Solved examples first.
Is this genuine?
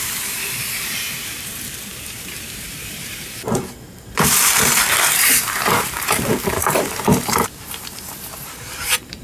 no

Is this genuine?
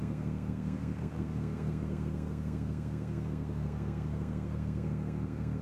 no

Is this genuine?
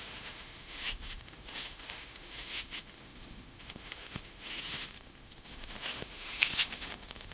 no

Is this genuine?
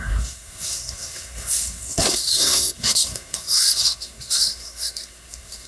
no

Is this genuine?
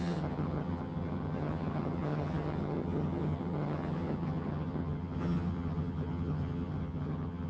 no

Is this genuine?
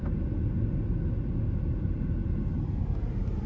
yes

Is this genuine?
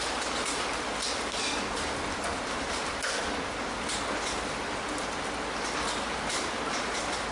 yes